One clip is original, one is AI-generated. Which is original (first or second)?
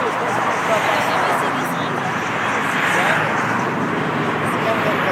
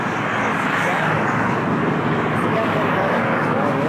first